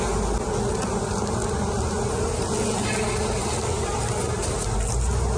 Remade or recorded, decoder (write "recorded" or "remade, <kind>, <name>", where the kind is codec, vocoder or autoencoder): recorded